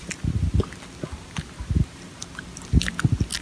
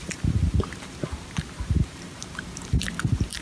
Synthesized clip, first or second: second